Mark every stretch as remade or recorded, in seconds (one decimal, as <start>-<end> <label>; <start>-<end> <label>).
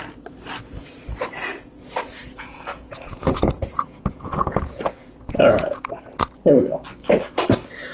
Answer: 0.0-2.2 recorded; 2.2-5.9 remade; 5.9-7.9 recorded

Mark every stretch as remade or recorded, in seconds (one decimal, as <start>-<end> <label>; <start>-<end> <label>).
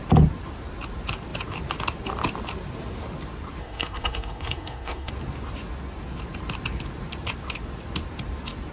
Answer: 0.0-3.6 recorded; 3.6-5.1 remade; 5.1-8.7 recorded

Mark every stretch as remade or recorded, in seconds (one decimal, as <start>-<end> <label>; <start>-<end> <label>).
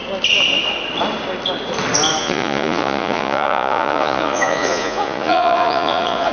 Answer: 0.0-2.2 recorded; 2.2-6.3 remade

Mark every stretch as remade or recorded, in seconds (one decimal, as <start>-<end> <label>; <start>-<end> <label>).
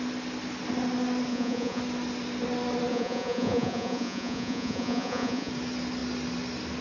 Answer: 0.0-1.3 recorded; 1.3-1.8 remade; 1.8-2.9 recorded; 2.9-5.5 remade; 5.5-6.8 recorded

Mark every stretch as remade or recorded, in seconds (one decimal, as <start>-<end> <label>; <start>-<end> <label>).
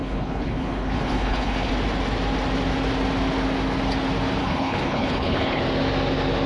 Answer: 0.0-1.7 remade; 1.7-4.4 recorded; 4.4-5.6 remade; 5.6-6.5 recorded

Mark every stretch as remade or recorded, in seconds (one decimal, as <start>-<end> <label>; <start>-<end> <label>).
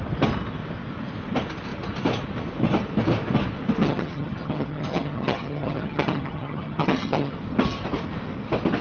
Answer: 0.0-3.8 recorded; 3.8-7.3 remade; 7.3-8.8 recorded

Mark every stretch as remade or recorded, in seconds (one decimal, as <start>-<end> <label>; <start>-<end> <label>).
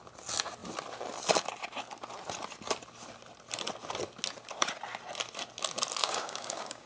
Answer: 0.0-6.0 recorded; 6.0-6.9 remade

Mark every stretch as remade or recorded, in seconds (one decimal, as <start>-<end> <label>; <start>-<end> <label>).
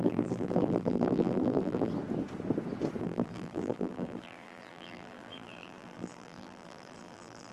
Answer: 0.0-1.9 remade; 1.9-3.0 recorded; 3.0-7.5 remade